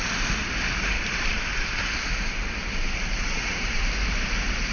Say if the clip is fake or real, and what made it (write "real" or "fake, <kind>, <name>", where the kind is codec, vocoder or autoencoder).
fake, vocoder, BigVGAN v2